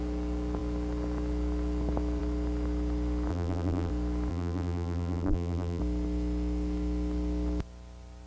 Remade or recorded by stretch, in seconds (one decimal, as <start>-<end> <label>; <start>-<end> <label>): 0.0-3.3 recorded; 3.3-3.9 remade; 3.9-4.3 recorded; 4.3-5.8 remade; 5.8-8.3 recorded